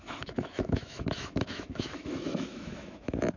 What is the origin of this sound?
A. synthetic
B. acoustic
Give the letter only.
A